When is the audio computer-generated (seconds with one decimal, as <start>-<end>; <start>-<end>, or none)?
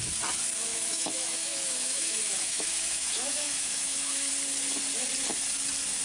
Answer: 0.7-4.3